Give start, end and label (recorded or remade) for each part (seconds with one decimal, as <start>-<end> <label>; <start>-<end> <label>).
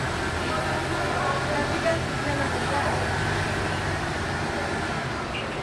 0.0-1.6 recorded; 1.6-5.0 remade; 5.0-5.6 recorded